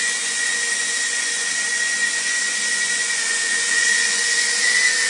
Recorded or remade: remade